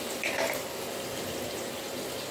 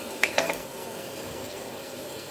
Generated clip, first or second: second